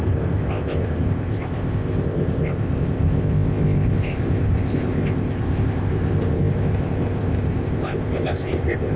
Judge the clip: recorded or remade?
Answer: remade